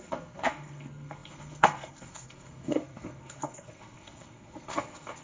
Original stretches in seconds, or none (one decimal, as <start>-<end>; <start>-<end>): none